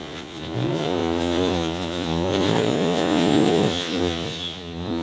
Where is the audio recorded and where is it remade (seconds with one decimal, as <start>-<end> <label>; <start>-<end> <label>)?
0.0-5.0 remade